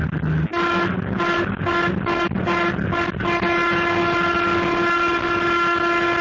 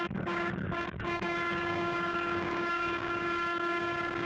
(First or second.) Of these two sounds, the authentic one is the first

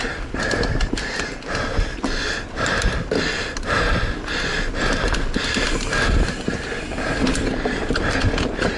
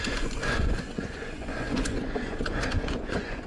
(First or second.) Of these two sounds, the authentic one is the first